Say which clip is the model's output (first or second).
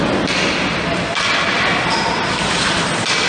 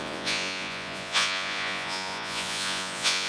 second